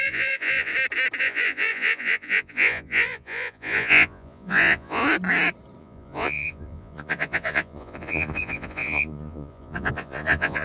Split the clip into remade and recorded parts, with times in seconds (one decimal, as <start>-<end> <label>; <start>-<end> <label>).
0.0-0.7 remade; 0.7-1.2 recorded; 1.2-5.0 remade; 5.0-5.8 recorded; 5.8-10.6 remade